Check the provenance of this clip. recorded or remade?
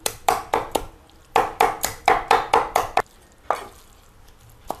remade